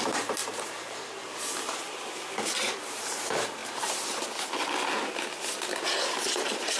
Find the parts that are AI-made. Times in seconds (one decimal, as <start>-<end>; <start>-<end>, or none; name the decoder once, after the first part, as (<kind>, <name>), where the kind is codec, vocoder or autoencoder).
0.0-3.6 (vocoder, BigVGAN v2)